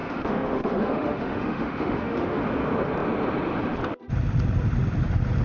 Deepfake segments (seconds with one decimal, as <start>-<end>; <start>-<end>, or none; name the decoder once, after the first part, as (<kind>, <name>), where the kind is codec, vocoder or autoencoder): 0.0-2.4 (autoencoder, DAC-VAE)

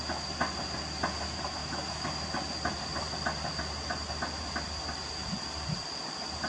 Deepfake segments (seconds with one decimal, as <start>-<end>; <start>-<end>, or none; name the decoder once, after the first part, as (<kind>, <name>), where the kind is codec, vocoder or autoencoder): 1.6-2.3 (autoencoder, DAC-VAE)

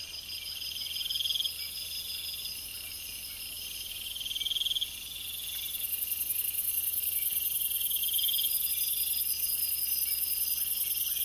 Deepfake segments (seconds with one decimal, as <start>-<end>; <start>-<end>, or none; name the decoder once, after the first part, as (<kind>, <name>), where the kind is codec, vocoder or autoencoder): none

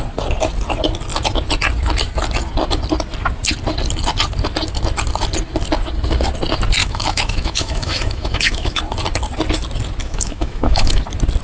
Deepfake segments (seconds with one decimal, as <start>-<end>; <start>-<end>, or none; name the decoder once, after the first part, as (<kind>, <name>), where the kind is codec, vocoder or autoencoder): 6.8-8.8 (autoencoder, DAC-VAE); 10.0-11.0

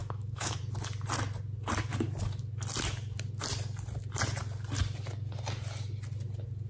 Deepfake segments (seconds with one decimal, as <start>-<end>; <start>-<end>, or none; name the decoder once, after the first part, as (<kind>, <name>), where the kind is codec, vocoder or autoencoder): 0.0-0.6 (autoencoder, DAC-VAE)